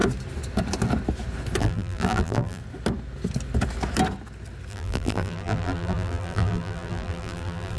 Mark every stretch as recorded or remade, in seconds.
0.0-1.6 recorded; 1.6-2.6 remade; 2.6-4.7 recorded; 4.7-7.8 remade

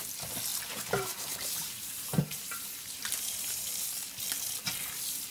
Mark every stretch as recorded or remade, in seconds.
0.0-0.5 recorded; 0.5-3.7 remade; 3.7-5.3 recorded

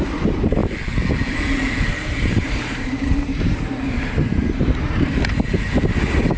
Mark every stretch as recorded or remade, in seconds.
0.0-0.6 remade; 0.6-1.9 recorded; 1.9-6.4 remade

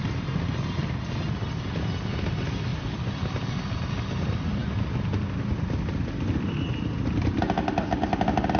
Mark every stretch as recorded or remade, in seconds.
0.0-8.6 recorded

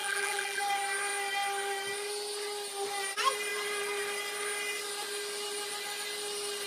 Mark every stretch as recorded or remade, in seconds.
0.0-0.6 remade; 0.6-6.7 recorded